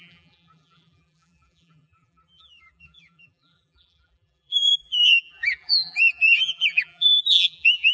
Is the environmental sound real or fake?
fake